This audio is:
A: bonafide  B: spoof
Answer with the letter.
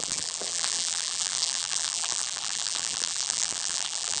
B